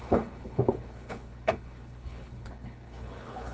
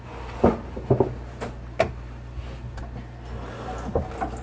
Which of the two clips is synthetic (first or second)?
first